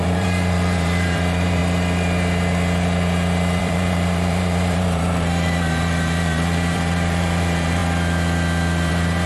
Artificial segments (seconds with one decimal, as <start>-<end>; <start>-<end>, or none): 0.0-1.6; 3.6-7.8; 8.9-9.3